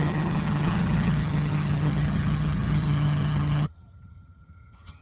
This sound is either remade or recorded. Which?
remade